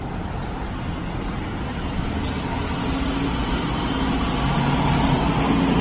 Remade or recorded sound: recorded